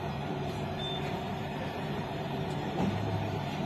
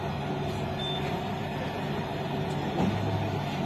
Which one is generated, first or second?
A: first